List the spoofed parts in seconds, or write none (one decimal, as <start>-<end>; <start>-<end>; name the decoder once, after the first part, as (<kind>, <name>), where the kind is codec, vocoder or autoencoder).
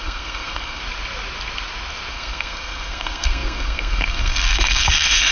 0.0-0.8 (codec, SNAC); 2.1-5.3